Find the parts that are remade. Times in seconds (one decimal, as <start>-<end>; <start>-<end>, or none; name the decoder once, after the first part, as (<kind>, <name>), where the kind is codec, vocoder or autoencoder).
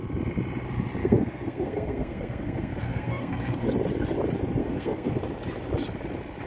1.0-3.7 (codec, SNAC); 4.6-5.2